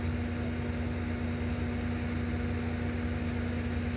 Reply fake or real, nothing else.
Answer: real